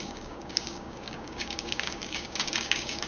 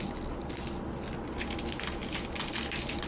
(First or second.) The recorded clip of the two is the second